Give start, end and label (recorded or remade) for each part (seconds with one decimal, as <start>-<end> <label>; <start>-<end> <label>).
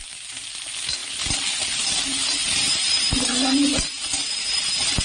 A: 0.0-2.4 recorded; 2.4-3.1 remade; 3.1-5.0 recorded